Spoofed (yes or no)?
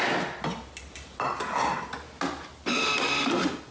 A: no